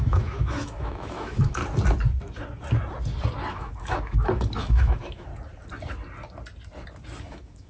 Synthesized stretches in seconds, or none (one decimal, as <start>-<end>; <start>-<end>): 0.0-1.6; 3.5-5.3; 7.2-7.7